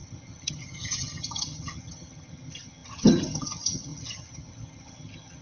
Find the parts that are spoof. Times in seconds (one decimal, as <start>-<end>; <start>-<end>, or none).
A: 0.0-5.4